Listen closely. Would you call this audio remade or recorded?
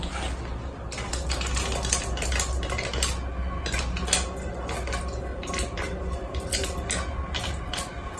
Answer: recorded